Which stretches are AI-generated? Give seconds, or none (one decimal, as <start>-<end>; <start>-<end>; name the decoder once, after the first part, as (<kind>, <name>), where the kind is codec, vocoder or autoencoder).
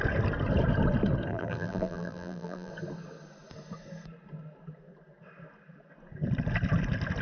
1.3-2.7 (vocoder, BigVGAN v2)